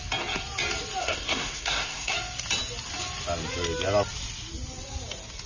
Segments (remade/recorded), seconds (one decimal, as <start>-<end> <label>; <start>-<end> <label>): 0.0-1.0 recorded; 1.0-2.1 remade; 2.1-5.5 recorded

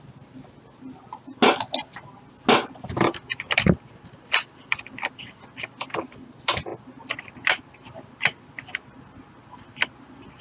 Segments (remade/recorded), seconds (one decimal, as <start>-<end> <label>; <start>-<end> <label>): 0.0-10.4 recorded

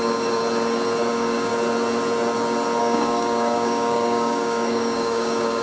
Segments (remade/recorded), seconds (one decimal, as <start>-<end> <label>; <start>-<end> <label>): 0.0-0.4 remade; 0.4-1.1 recorded; 1.1-1.5 remade; 1.5-2.8 recorded; 2.8-5.6 remade

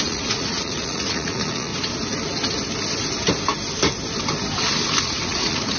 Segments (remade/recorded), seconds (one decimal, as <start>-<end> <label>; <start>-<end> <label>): 0.0-1.7 remade; 1.7-5.0 recorded; 5.0-5.8 remade